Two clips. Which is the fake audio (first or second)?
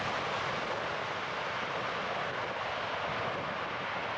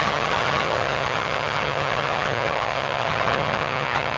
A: second